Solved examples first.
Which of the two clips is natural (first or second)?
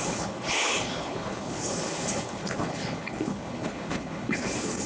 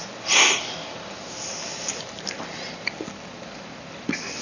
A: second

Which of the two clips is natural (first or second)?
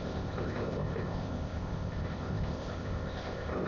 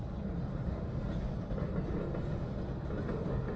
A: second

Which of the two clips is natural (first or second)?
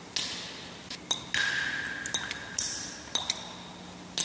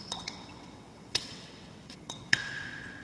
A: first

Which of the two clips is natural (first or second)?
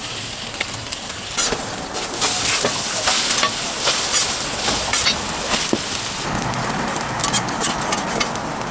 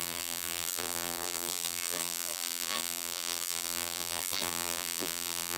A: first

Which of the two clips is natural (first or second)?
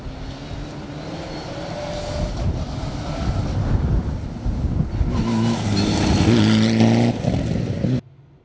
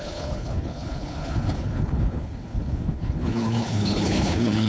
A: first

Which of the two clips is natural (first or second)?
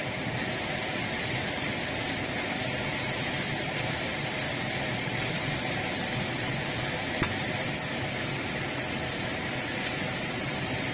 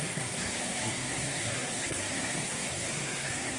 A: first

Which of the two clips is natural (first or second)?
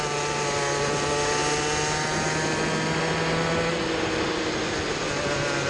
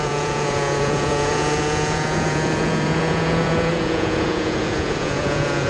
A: first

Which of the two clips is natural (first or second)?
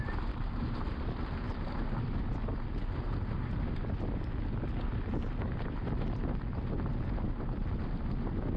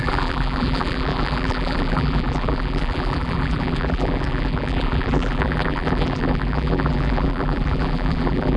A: first